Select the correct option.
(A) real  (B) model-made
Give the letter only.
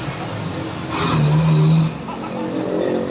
A